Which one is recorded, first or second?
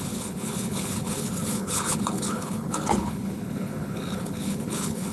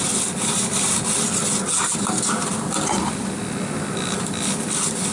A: second